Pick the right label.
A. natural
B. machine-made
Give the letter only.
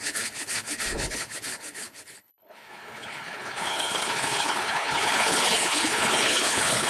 B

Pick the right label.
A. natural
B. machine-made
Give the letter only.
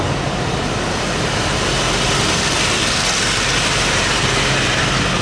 A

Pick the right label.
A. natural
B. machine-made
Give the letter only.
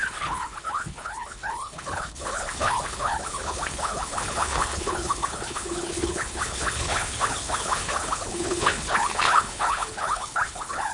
B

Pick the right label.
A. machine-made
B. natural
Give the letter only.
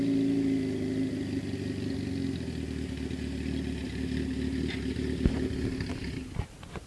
B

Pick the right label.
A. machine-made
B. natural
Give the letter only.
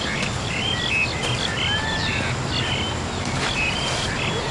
B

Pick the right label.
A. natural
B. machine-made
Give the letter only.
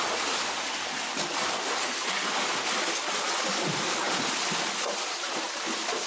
A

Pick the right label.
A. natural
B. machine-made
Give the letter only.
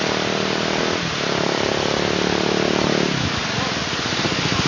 A